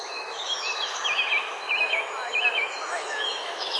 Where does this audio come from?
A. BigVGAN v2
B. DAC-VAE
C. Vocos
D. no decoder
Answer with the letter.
B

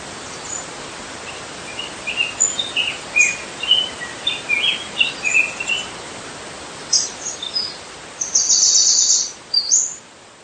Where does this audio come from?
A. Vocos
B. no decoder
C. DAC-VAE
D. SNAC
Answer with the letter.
B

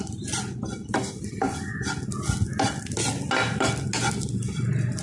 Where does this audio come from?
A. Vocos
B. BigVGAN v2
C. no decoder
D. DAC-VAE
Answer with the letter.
C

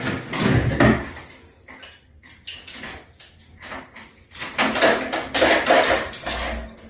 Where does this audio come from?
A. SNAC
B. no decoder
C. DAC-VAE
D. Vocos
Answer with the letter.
B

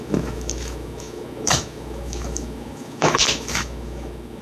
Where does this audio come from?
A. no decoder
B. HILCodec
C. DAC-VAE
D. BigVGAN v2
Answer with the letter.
C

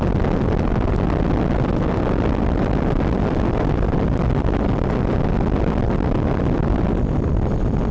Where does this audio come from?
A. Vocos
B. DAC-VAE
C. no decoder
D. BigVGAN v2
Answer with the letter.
C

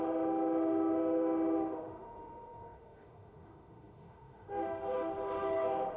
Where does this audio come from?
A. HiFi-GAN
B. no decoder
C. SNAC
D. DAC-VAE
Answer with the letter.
D